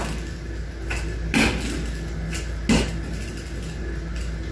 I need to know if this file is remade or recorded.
recorded